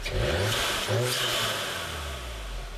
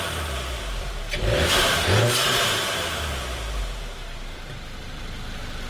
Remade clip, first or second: second